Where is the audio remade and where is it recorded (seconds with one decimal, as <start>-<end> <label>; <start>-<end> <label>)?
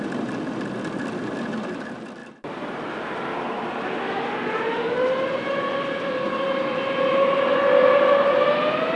0.0-9.0 recorded